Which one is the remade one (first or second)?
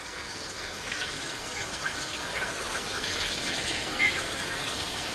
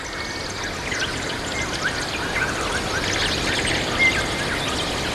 first